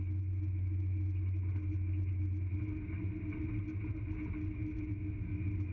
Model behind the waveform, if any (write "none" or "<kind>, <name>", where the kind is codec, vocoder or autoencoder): none